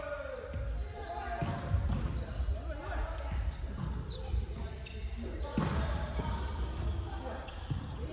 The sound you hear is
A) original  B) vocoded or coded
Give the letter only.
A